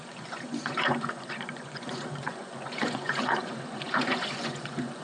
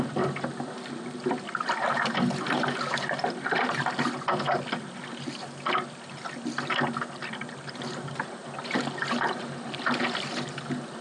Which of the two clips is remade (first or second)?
first